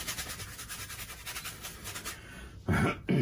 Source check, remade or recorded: recorded